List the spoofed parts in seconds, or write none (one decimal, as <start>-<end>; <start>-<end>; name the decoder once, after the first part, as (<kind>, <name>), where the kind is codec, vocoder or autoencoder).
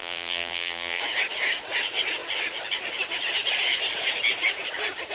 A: 0.0-1.0 (vocoder, BigVGAN v2)